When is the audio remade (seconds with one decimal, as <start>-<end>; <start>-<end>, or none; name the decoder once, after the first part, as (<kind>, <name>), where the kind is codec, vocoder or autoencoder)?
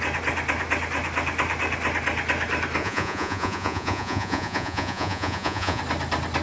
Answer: 2.8-5.8 (vocoder, Vocos)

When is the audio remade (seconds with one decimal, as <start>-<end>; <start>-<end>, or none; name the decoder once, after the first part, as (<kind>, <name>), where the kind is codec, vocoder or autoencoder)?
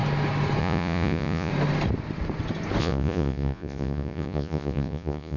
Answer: 0.6-1.5 (vocoder, Vocos); 2.8-5.4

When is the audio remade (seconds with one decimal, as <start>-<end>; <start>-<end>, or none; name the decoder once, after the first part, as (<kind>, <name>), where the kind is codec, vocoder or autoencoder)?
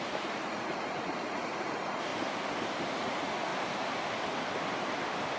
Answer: 0.0-2.1 (vocoder, Vocos); 2.9-3.5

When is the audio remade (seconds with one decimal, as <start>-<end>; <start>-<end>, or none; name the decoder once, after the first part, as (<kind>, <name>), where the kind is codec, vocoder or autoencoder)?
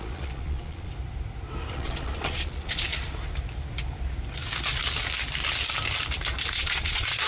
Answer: 0.0-0.9 (vocoder, Vocos); 1.7-2.9; 6.5-7.3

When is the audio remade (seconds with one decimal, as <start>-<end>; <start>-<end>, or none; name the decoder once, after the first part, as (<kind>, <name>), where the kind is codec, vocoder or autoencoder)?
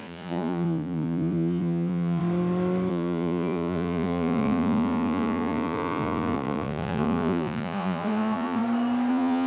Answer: 0.0-2.2 (vocoder, Vocos); 2.9-8.6; 9.1-9.5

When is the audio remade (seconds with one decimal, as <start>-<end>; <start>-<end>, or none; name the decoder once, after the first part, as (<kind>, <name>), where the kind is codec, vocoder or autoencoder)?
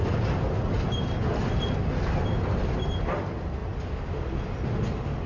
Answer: none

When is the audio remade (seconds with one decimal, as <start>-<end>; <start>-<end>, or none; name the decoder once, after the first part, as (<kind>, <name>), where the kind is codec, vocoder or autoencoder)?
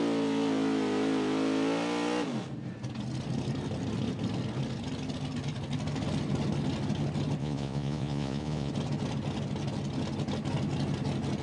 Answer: 7.4-8.7 (vocoder, Vocos)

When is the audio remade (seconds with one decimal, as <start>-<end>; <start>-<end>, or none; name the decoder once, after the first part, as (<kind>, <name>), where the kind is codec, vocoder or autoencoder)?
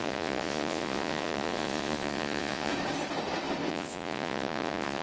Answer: 0.0-2.7 (vocoder, Vocos); 3.7-5.0